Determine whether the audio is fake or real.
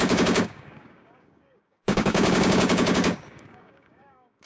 fake